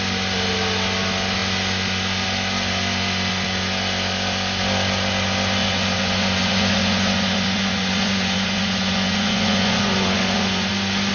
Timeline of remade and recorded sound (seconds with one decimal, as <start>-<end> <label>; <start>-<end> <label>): 0.0-5.6 recorded; 5.6-10.7 remade; 10.7-11.1 recorded